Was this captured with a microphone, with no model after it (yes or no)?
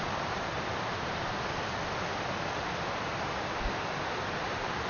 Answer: yes